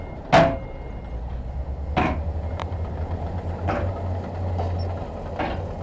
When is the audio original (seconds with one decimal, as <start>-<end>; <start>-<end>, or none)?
0.0-2.6; 3.9-5.8